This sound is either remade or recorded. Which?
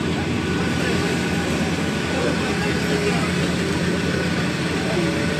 recorded